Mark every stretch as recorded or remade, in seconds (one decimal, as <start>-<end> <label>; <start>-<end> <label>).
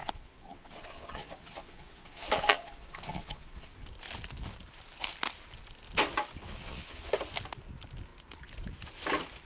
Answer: 0.0-3.7 remade; 3.7-6.5 recorded; 6.5-7.1 remade; 7.1-9.4 recorded